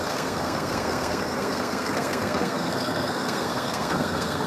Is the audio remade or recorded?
remade